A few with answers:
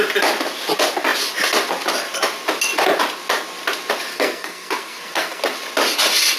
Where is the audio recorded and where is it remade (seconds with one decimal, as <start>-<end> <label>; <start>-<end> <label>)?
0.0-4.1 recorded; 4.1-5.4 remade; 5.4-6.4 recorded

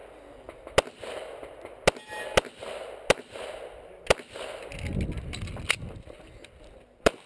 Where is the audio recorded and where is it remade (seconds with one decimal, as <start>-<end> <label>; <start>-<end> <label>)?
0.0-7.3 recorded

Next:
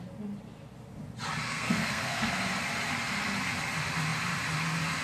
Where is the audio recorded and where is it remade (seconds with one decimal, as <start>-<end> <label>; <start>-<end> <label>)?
0.0-1.5 recorded; 1.5-2.3 remade; 2.3-5.0 recorded